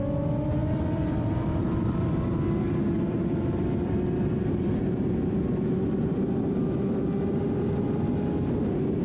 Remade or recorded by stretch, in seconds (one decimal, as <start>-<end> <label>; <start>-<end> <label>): 0.0-0.6 recorded; 0.6-4.8 remade; 4.8-9.0 recorded